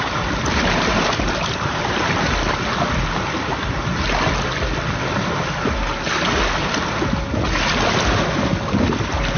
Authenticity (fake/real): real